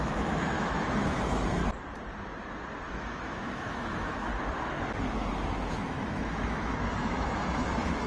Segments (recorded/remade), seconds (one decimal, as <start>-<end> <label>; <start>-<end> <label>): 0.0-1.6 remade; 1.6-2.9 recorded; 2.9-4.3 remade; 4.3-5.7 recorded; 5.7-8.1 remade